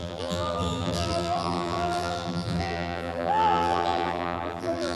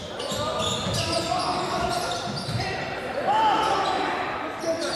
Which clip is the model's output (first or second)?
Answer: first